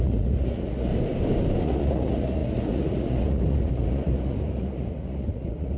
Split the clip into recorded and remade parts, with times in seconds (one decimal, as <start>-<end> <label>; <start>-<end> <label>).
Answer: 0.0-0.9 remade; 0.9-1.6 recorded; 1.6-5.8 remade